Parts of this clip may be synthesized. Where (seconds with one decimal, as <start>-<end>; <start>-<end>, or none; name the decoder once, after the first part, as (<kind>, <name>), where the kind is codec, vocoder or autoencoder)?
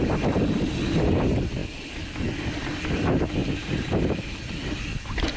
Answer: 3.4-4.2 (vocoder, BigVGAN v2)